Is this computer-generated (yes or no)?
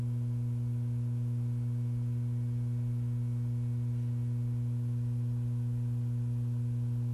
no